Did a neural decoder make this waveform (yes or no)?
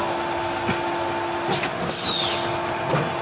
no